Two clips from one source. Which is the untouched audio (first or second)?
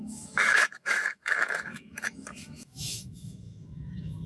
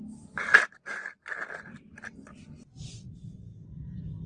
second